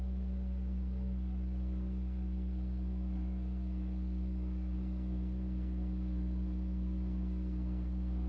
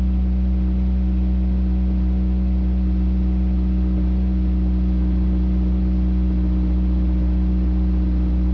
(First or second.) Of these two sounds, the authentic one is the second